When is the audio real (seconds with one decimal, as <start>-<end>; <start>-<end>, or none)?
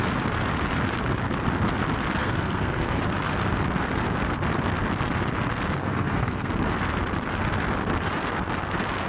0.0-2.2; 3.0-5.8; 6.5-9.1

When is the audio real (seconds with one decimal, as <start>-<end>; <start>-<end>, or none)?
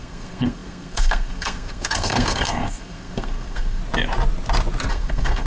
3.8-4.9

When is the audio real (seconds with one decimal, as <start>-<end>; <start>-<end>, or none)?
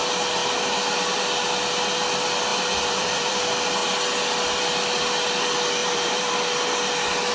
0.0-2.5; 3.4-5.8; 6.3-7.3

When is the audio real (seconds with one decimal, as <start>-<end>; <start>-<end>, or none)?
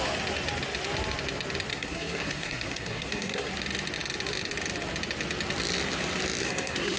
0.0-1.7; 3.5-6.4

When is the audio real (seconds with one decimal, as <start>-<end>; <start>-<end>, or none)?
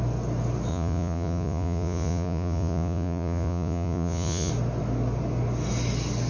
0.0-0.7; 4.5-6.3